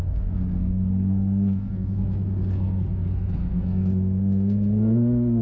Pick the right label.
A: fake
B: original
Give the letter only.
A